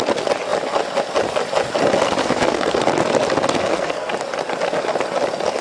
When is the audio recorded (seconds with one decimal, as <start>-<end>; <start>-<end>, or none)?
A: 0.0-2.2; 2.9-3.6; 4.1-5.6